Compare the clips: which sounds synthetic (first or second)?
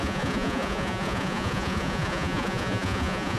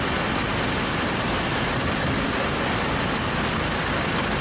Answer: first